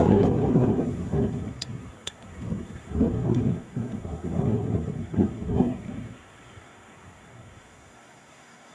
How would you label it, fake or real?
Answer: fake